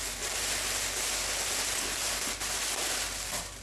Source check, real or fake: real